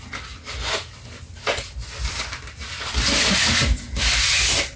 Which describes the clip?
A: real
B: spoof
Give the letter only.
A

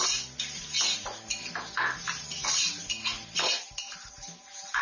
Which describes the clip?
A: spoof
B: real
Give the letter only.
B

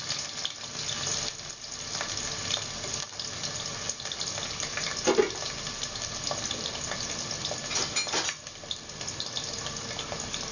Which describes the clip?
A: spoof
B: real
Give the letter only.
B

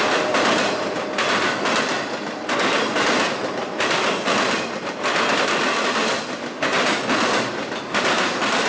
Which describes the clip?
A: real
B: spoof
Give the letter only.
A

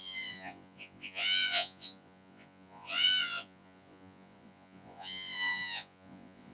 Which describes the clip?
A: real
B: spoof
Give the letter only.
B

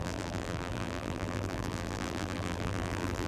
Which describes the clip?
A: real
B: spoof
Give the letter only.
B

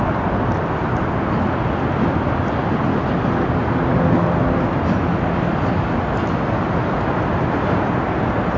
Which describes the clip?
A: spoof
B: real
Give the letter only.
B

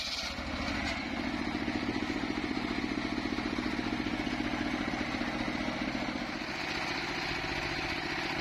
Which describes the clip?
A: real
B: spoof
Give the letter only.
A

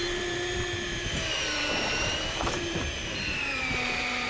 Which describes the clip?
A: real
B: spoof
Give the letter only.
B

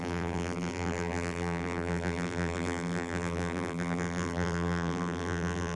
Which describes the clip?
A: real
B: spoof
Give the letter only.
B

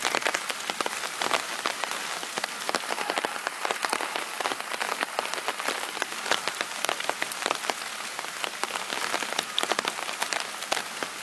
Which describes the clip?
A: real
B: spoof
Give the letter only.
A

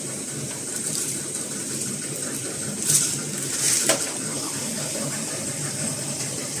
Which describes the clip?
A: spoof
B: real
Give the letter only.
A